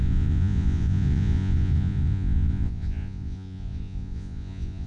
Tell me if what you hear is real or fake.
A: fake